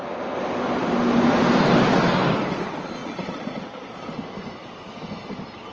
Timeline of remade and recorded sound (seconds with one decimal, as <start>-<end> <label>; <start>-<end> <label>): 0.0-3.0 recorded; 3.0-4.0 remade; 4.0-5.7 recorded